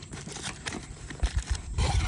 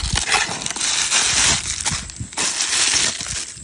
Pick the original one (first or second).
second